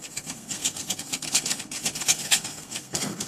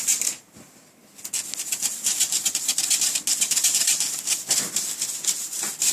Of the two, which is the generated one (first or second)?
first